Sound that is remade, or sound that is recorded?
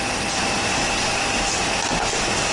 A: recorded